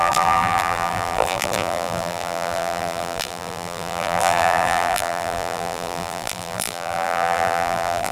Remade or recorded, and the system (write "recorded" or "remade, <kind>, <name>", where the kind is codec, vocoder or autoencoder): remade, vocoder, BigVGAN v2